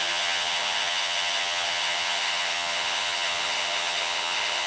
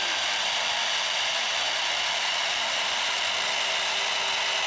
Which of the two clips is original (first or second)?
second